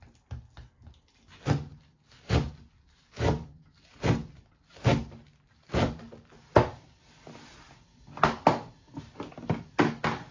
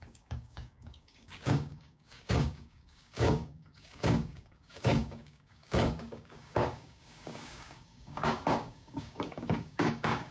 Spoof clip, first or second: second